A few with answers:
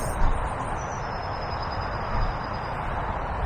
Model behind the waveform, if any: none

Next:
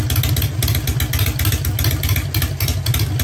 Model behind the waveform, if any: none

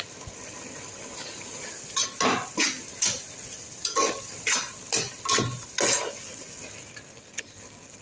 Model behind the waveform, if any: none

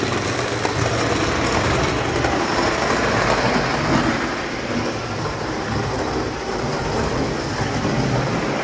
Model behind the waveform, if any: none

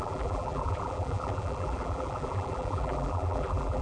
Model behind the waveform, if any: vocoder, BigVGAN v2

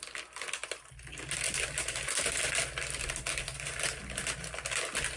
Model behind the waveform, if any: none